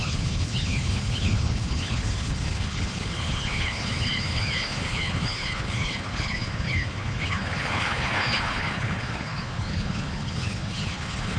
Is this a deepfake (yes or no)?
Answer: yes